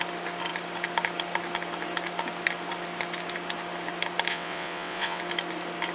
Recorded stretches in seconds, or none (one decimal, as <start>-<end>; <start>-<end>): 0.0-4.3; 5.2-5.9

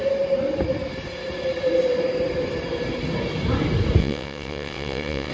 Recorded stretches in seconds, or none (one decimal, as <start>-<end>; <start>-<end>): 0.0-4.0

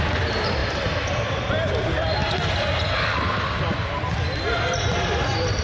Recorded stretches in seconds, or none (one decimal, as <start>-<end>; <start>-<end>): 0.0-5.6

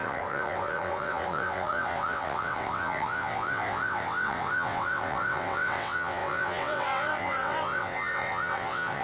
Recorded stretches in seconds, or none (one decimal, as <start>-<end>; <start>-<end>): none

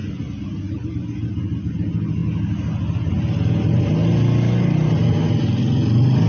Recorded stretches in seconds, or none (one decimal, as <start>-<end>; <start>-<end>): 0.0-6.3

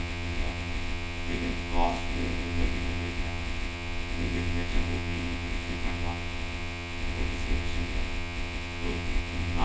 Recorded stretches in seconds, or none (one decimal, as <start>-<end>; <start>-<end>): none